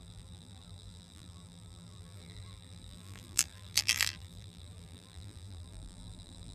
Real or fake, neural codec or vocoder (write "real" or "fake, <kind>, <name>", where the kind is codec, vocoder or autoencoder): fake, vocoder, BigVGAN v2